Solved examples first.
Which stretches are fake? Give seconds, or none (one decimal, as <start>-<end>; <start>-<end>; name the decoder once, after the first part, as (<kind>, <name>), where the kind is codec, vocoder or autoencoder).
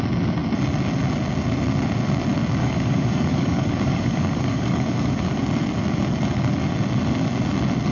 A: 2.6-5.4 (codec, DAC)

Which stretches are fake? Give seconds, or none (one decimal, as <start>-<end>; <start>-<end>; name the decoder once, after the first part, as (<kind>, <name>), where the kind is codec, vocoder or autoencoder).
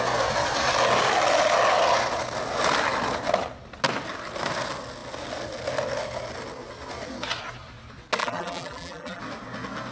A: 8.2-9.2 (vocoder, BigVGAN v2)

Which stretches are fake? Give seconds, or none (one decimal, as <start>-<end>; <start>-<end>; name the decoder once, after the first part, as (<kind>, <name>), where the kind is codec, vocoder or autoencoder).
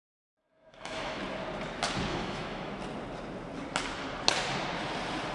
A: 0.5-1.2 (autoencoder, DAC-VAE); 2.1-2.8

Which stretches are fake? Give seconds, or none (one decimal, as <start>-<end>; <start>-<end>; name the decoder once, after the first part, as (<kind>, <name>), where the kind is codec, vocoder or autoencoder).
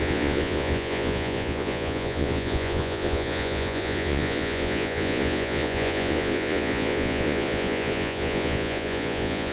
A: 0.0-9.5 (vocoder, Vocos)